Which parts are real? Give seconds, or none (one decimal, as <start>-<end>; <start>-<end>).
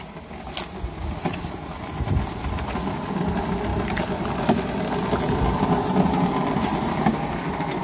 0.0-3.7; 5.4-6.7